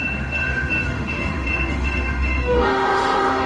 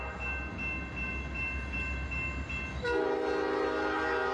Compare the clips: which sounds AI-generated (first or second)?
first